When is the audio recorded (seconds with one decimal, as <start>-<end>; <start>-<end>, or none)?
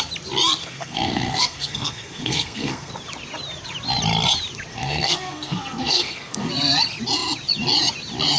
0.0-0.6; 2.9-4.7; 6.5-8.4